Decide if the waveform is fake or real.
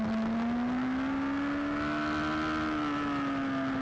real